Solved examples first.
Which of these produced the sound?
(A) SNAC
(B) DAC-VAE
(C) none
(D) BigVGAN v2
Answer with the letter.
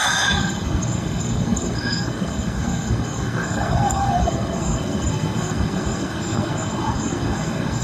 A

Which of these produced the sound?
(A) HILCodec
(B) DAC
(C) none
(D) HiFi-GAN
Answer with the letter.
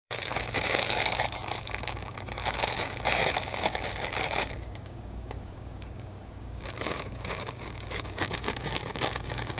B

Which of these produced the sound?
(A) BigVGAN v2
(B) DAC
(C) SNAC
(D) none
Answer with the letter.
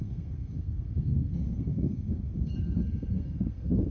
C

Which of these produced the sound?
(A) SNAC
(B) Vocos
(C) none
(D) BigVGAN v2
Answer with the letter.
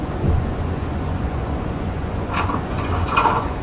B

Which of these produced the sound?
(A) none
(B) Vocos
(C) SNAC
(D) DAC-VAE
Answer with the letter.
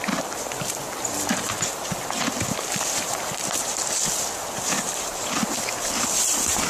A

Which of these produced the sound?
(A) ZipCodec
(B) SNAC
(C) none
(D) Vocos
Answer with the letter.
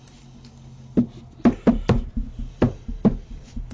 C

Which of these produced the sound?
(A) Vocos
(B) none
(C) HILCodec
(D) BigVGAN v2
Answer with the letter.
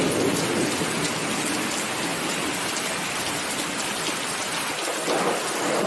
B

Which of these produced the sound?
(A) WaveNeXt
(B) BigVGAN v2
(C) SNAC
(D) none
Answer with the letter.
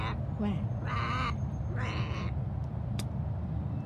D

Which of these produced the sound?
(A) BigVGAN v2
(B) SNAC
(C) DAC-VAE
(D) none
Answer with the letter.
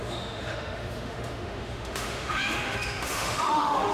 C